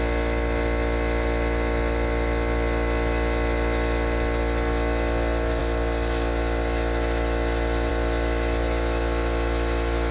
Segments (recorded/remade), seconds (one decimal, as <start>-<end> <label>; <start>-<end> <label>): 0.0-10.1 recorded